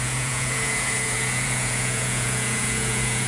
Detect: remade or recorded remade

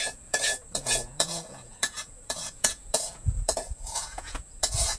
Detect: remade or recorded remade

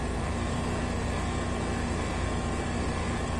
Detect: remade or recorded remade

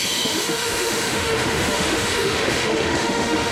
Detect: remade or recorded remade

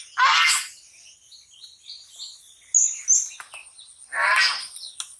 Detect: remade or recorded recorded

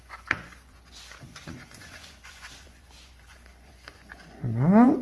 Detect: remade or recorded remade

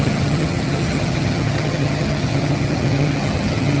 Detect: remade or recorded remade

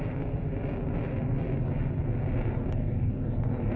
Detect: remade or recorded recorded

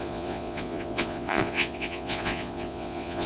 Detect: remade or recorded remade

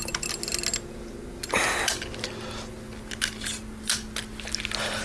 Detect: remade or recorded recorded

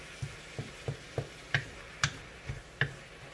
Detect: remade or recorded recorded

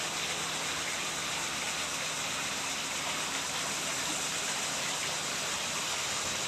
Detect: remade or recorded recorded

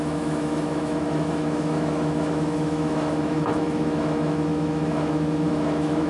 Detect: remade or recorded remade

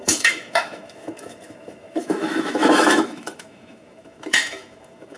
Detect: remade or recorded remade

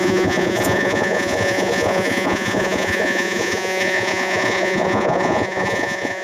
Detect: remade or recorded remade